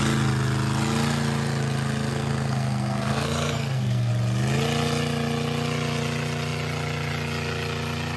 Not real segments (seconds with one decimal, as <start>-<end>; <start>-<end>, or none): 2.1-4.1